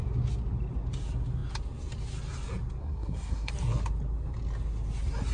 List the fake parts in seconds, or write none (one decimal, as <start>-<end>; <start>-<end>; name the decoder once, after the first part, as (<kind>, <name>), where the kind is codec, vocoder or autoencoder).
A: 2.8-3.5 (codec, SNAC)